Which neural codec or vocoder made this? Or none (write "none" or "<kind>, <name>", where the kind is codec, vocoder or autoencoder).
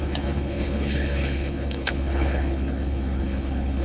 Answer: codec, HILCodec